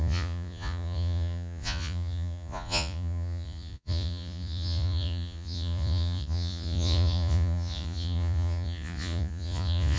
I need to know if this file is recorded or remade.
remade